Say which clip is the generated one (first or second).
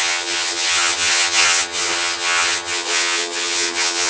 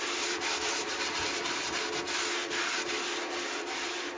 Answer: first